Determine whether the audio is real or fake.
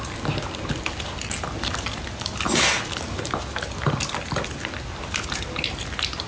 real